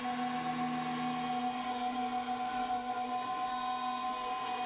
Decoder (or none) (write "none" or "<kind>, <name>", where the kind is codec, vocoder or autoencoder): none